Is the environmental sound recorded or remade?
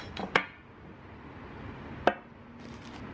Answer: recorded